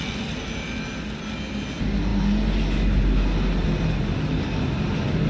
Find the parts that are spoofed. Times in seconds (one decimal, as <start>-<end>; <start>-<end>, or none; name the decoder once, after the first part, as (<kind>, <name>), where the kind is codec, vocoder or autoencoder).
2.1-5.3 (vocoder, BigVGAN v2)